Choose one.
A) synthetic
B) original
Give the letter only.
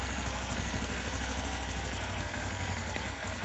A